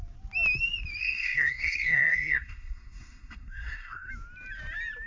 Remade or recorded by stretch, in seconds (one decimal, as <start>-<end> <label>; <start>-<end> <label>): 0.0-1.0 recorded; 1.0-4.1 remade; 4.1-5.1 recorded